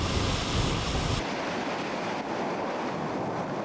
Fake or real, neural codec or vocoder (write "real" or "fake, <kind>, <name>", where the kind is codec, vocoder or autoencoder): real